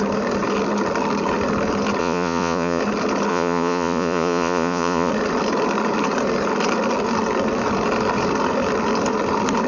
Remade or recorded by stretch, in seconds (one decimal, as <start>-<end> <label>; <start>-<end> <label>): 0.0-2.0 recorded; 2.0-2.8 remade; 2.8-3.3 recorded; 3.3-5.1 remade; 5.1-9.7 recorded